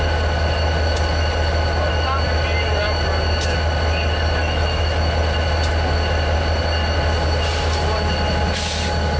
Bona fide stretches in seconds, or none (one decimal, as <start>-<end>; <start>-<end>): 0.0-4.4; 5.1-9.2